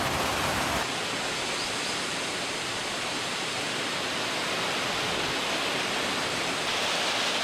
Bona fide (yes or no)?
yes